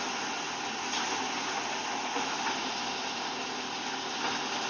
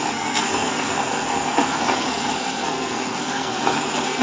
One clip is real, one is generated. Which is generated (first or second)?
second